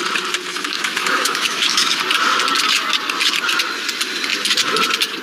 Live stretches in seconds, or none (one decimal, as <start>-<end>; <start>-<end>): 0.0-0.5; 2.0-5.2